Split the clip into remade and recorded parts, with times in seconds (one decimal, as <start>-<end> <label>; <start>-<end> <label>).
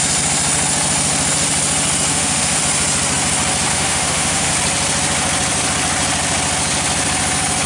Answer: 0.0-2.1 recorded; 2.1-2.6 remade; 2.6-3.7 recorded; 3.7-4.5 remade; 4.5-7.7 recorded